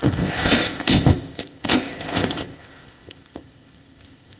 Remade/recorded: remade